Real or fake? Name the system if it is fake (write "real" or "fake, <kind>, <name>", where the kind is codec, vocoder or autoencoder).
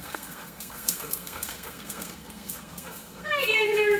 fake, codec, SNAC